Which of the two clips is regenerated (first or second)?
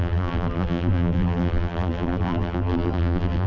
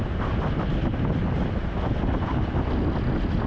first